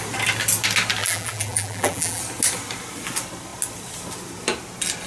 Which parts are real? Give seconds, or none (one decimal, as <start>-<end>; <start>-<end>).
0.0-1.0; 2.2-5.1